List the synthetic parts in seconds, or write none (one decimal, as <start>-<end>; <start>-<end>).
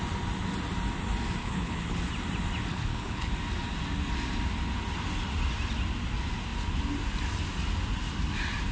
1.4-2.0; 2.7-3.3